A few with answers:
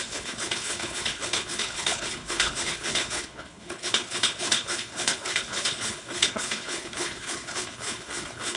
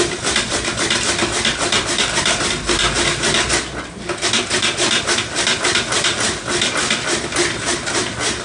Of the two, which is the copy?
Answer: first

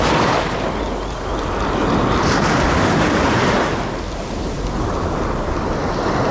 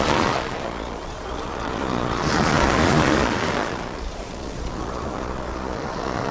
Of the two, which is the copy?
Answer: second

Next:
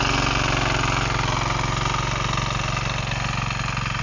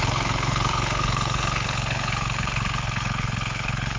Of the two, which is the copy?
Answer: second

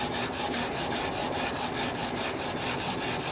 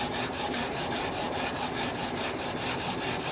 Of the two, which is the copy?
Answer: second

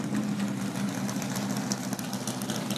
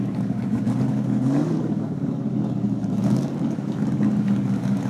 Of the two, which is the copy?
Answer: second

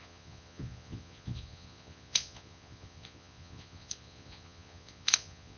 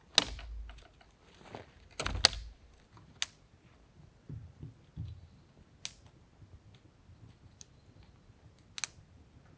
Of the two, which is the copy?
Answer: first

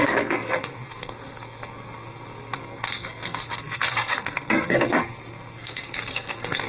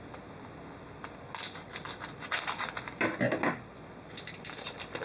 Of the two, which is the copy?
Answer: first